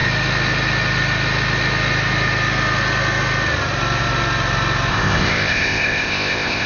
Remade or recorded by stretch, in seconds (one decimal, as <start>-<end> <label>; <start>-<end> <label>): 0.0-4.9 recorded; 4.9-6.7 remade